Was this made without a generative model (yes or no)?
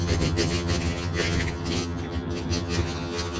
no